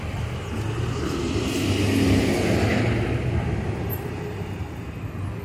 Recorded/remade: recorded